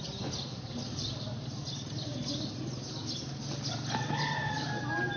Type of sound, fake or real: real